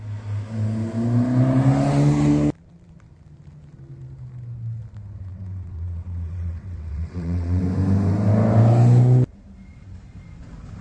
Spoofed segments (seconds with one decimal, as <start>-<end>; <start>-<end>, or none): 5.3-7.6